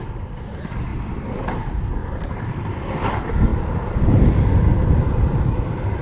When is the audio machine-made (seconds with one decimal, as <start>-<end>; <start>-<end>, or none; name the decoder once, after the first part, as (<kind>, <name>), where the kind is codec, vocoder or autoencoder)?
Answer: 0.0-0.9 (vocoder, BigVGAN v2); 1.5-2.0; 2.9-3.5; 4.0-6.0